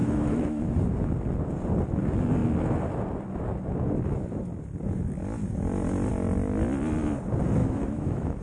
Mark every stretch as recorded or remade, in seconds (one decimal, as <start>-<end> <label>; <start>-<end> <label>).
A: 0.0-0.6 remade; 0.6-7.6 recorded; 7.6-8.4 remade